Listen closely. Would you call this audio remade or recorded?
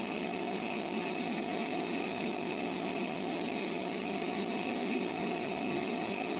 remade